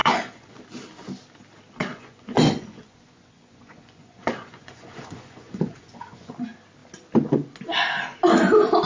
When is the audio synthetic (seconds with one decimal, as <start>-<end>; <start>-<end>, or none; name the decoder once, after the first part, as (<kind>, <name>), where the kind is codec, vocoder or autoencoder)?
0.0-0.6 (vocoder, Vocos); 1.9-6.3

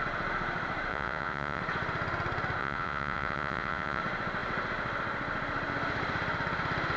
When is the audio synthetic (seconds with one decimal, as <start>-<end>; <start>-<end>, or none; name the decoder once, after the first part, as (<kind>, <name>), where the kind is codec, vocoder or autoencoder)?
0.9-1.6 (vocoder, Vocos); 2.6-4.0

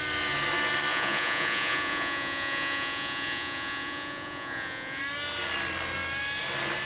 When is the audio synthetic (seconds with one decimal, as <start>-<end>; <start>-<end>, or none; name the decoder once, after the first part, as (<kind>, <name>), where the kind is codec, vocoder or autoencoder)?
0.9-5.0 (vocoder, Vocos)